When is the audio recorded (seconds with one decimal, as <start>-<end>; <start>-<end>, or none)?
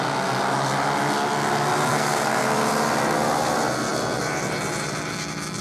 0.0-1.9; 2.5-5.6